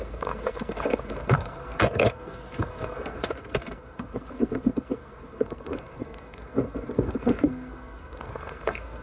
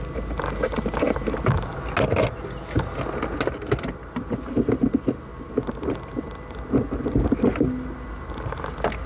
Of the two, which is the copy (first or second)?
first